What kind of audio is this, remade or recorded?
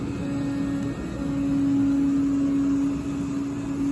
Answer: recorded